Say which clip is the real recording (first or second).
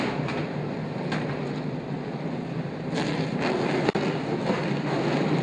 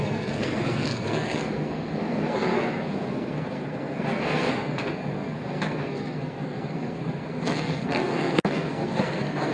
first